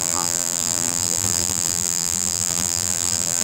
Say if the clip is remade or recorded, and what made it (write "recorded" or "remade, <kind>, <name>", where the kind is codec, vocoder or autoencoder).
remade, vocoder, BigVGAN v2